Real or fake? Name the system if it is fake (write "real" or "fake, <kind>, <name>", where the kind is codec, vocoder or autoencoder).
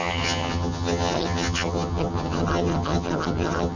fake, vocoder, HiFi-GAN